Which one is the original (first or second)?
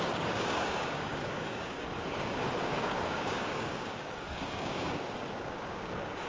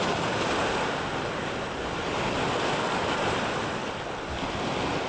second